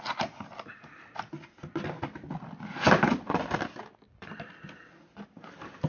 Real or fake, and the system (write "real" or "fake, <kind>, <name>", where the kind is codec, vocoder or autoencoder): real